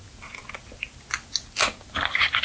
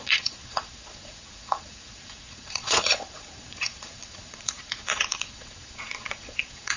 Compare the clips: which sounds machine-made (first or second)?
second